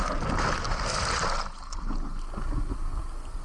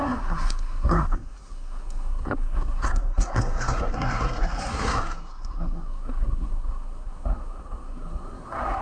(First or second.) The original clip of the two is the first